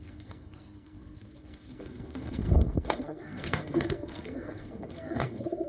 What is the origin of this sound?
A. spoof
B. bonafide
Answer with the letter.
A